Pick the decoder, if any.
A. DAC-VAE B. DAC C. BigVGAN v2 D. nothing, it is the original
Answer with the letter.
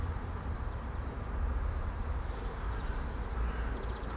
C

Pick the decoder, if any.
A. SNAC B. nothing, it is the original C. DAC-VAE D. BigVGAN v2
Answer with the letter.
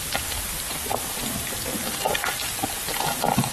B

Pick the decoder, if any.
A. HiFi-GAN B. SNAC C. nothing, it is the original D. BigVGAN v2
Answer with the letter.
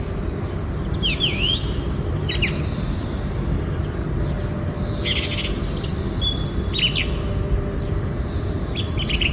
C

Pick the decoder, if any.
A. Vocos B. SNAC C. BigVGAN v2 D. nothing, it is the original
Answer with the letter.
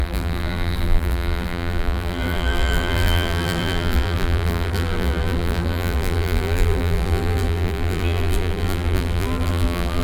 C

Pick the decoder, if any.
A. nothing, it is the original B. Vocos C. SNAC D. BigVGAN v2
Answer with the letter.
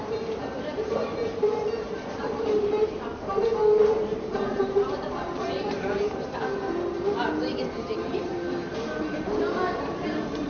D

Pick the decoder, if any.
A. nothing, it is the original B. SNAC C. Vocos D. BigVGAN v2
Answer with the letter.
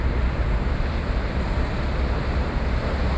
A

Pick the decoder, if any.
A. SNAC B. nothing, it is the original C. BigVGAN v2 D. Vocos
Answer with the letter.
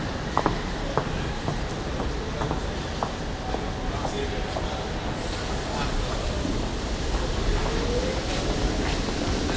B